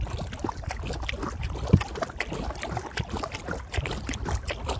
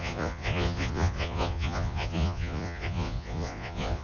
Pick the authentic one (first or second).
first